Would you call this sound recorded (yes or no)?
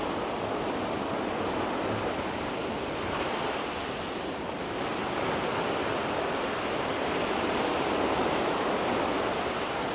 yes